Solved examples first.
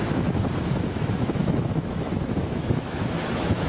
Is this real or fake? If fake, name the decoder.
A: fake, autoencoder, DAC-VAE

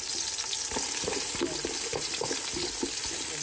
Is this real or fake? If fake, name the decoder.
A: real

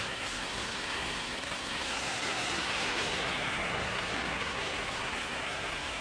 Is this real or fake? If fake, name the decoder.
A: fake, codec, SNAC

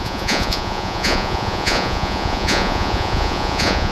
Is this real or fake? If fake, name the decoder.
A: fake, vocoder, Vocos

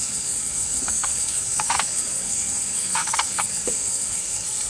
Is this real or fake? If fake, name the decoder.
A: fake, codec, SNAC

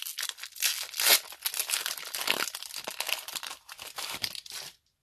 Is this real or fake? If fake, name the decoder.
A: real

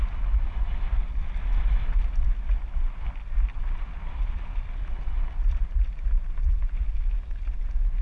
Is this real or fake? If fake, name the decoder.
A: real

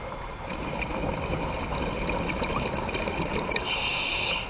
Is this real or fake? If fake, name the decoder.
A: real